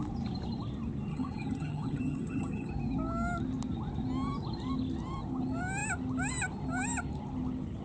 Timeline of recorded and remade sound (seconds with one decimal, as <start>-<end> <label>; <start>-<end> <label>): 0.0-1.1 recorded; 1.1-2.7 remade; 2.7-7.8 recorded